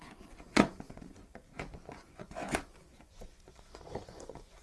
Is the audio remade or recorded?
remade